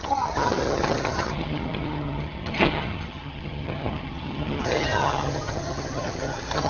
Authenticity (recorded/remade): remade